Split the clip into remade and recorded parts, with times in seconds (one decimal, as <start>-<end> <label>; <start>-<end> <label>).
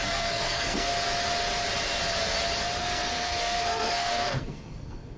0.0-0.9 remade; 0.9-2.8 recorded; 2.8-5.2 remade